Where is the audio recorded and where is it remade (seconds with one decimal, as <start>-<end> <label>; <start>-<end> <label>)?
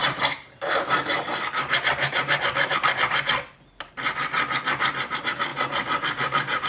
0.0-2.3 remade; 2.3-6.7 recorded